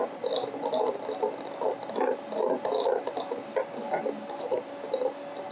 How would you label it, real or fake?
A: real